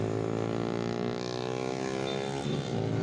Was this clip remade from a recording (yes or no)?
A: no